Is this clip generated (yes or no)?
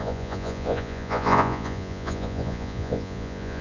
yes